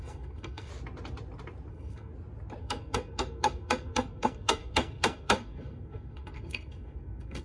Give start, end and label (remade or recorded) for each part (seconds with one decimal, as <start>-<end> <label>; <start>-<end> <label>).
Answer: 0.0-0.7 remade; 0.7-1.7 recorded; 1.7-2.1 remade; 2.1-2.6 recorded; 2.6-7.4 remade